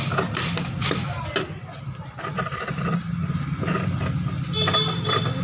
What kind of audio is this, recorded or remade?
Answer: recorded